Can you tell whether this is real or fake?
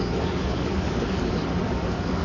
fake